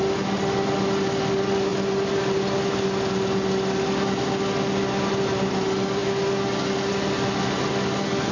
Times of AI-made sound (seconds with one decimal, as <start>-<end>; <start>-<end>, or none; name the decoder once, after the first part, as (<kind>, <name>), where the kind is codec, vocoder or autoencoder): none